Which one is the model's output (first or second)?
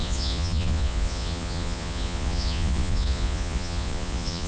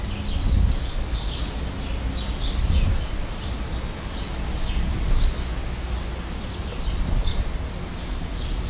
first